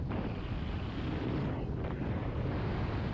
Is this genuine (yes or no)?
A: yes